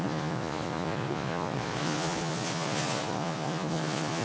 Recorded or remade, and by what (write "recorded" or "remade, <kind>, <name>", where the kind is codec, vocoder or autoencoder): remade, vocoder, Vocos